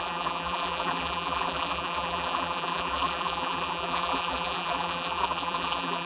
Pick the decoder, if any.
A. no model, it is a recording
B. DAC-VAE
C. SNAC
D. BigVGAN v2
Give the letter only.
D